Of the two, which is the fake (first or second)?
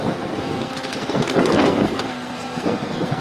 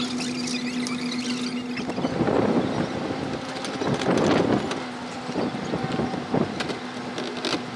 first